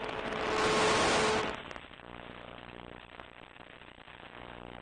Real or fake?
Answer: real